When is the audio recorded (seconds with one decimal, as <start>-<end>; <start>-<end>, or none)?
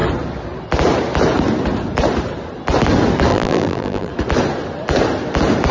0.0-3.3; 4.1-5.7